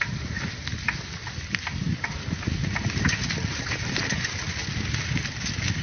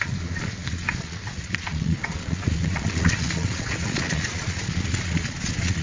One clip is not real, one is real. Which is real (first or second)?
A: first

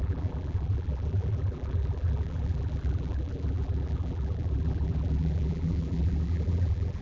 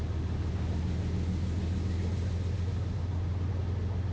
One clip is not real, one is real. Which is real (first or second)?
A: second